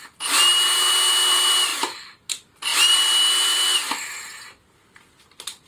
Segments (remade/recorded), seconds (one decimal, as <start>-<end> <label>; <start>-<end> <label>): 0.0-5.7 recorded